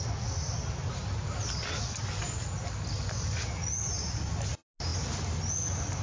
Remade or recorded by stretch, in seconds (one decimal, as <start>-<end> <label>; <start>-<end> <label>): 0.0-6.0 recorded